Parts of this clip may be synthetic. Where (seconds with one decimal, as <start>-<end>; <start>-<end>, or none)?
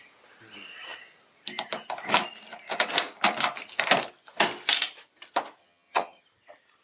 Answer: 5.6-6.2